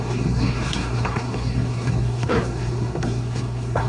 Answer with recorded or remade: remade